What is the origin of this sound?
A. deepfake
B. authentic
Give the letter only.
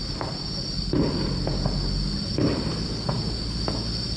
B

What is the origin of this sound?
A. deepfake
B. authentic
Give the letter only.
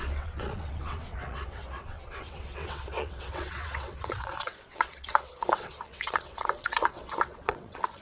A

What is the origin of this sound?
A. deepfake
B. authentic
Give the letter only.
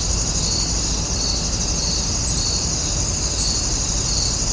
B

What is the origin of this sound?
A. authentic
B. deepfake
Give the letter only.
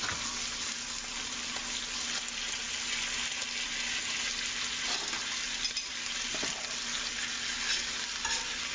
A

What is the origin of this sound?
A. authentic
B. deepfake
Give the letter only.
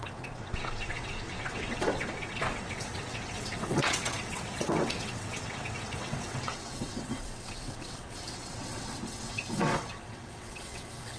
B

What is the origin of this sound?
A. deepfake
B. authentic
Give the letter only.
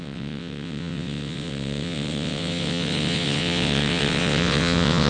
A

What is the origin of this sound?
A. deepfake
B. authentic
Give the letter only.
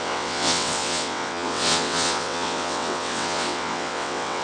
A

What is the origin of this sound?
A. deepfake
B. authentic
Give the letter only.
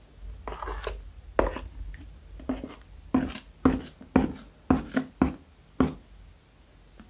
B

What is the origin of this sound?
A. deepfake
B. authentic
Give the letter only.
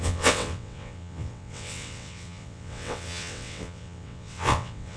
A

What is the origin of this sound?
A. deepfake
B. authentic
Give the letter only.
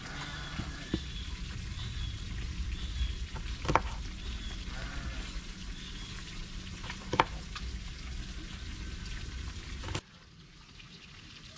B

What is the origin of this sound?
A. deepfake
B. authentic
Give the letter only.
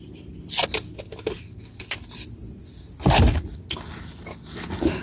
B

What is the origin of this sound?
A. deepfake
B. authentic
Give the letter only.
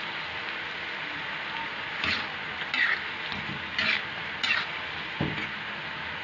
B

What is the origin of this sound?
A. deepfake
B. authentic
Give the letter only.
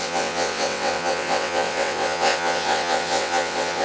A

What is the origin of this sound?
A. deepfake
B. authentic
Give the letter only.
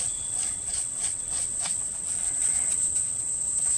A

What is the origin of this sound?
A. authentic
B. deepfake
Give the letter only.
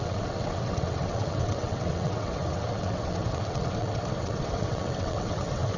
B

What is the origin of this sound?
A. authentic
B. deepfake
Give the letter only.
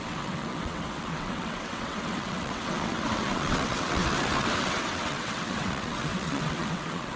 B